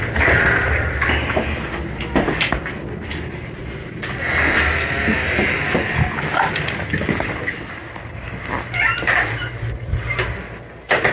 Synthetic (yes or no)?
no